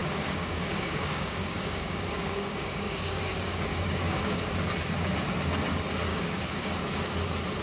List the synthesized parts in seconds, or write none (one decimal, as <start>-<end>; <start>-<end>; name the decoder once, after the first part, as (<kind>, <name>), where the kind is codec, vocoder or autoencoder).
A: 0.0-4.4 (codec, DAC); 6.1-6.7